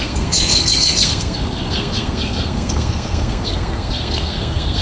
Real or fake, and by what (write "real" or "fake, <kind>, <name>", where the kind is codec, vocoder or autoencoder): fake, codec, SNAC